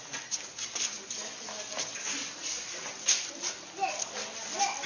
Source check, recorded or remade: recorded